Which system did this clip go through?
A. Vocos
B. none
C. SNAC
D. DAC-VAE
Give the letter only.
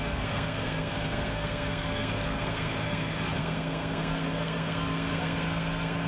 C